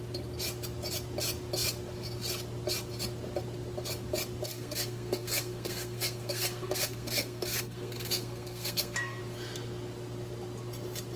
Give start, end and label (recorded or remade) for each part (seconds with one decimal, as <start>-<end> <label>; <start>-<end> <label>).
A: 0.0-4.5 recorded; 4.5-9.2 remade; 9.2-11.2 recorded